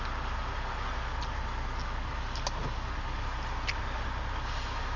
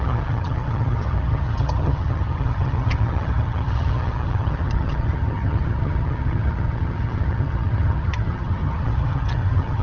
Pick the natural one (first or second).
first